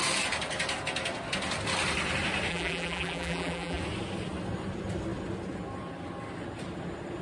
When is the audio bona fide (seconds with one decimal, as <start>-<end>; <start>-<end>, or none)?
0.0-2.5; 3.8-7.2